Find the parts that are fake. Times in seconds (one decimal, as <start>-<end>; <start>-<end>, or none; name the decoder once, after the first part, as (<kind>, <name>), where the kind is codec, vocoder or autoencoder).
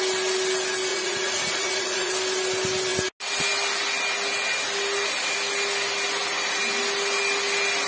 0.9-2.1 (vocoder, Vocos)